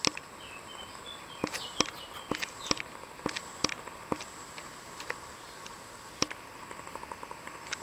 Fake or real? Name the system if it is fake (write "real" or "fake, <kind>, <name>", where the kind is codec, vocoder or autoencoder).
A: real